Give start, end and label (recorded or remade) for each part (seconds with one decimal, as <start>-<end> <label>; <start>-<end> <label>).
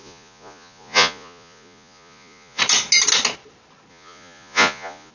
0.0-2.6 remade; 2.6-3.9 recorded; 3.9-5.1 remade